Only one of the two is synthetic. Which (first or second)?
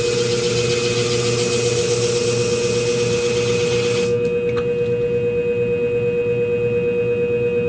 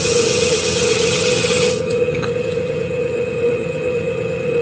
second